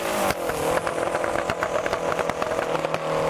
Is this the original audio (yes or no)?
yes